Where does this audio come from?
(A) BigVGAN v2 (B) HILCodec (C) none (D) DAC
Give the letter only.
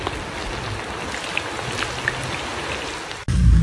C